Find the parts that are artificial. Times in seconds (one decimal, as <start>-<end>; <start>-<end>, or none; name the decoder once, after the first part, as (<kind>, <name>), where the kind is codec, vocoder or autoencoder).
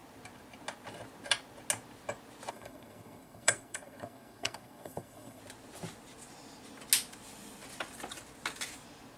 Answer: 2.5-5.4 (codec, SNAC)